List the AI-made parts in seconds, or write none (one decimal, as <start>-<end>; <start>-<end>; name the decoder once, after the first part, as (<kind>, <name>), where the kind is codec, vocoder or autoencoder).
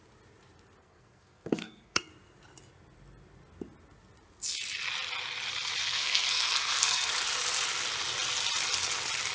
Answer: 0.8-2.1 (codec, SNAC); 5.8-7.1